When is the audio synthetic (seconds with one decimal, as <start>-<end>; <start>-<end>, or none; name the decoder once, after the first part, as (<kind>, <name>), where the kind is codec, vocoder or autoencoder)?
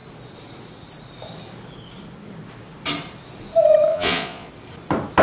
3.9-4.5 (vocoder, Vocos)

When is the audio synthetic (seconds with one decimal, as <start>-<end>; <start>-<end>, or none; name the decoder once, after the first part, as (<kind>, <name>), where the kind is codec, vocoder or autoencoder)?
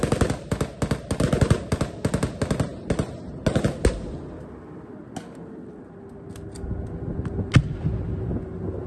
none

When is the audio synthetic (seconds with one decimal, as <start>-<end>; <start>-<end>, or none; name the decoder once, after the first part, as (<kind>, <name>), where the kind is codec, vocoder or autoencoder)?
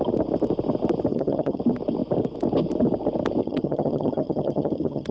1.1-1.6 (vocoder, HiFi-GAN); 3.4-5.1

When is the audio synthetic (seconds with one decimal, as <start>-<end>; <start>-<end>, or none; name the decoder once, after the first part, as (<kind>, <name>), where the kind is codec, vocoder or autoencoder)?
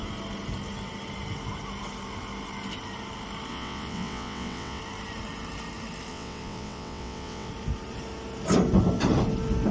3.5-4.8 (vocoder, WaveNeXt); 6.1-7.5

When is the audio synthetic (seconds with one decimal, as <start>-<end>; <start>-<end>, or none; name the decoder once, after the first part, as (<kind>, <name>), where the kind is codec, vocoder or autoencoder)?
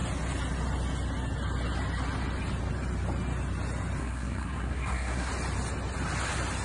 4.0-5.3 (codec, SNAC)